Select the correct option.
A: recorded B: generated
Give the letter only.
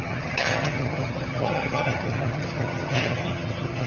B